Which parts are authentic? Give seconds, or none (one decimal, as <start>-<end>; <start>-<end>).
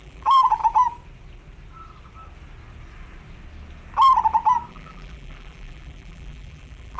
0.6-4.7